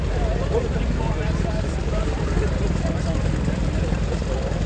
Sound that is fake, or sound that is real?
real